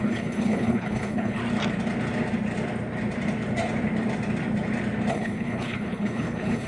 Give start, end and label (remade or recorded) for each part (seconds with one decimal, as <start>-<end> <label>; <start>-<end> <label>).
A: 0.0-1.4 remade; 1.4-5.1 recorded; 5.1-6.7 remade